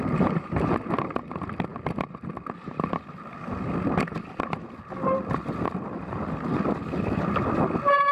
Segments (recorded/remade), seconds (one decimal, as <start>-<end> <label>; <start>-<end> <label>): 0.0-8.1 recorded